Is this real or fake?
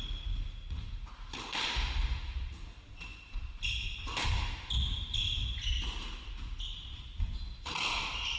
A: real